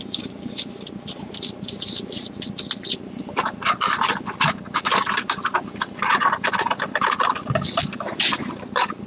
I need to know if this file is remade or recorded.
recorded